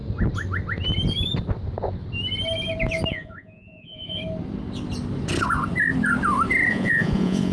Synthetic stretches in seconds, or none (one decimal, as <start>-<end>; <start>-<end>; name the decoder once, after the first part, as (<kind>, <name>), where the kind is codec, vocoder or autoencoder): 3.1-4.2 (vocoder, Vocos); 6.7-7.5